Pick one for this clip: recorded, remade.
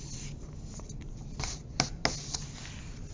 recorded